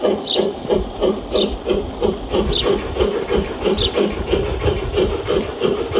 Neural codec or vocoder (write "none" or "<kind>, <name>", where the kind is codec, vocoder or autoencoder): none